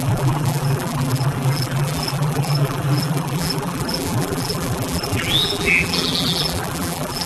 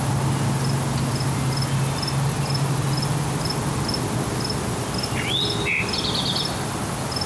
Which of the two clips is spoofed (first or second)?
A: first